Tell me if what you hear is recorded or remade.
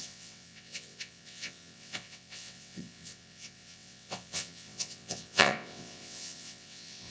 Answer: remade